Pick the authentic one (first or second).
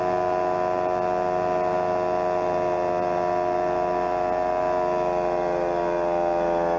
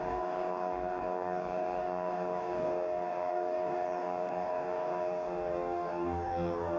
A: first